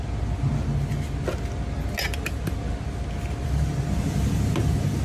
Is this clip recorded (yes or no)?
yes